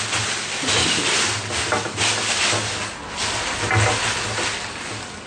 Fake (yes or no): no